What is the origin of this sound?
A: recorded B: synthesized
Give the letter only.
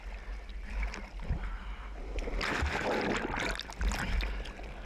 A